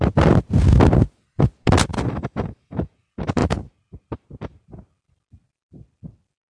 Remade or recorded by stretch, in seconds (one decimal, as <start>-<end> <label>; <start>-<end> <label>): 0.0-1.9 recorded; 1.9-2.8 remade; 2.8-6.5 recorded